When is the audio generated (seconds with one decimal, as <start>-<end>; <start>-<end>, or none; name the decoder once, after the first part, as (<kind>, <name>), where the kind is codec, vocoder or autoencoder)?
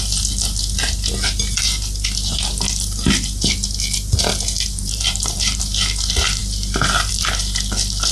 4.3-5.6 (vocoder, BigVGAN v2)